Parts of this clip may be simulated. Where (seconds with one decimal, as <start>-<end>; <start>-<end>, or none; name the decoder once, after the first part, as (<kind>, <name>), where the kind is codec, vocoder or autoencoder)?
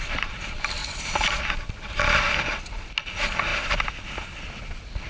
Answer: none